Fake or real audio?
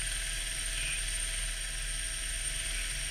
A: real